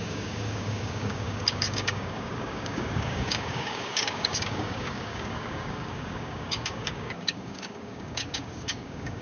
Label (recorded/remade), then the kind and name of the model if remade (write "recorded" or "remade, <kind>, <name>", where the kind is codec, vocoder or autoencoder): remade, codec, DAC